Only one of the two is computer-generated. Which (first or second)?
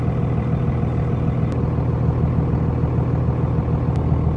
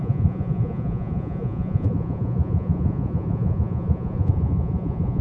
second